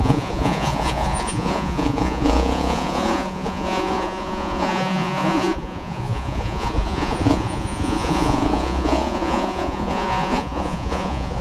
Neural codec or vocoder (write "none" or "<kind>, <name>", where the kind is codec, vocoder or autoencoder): vocoder, Vocos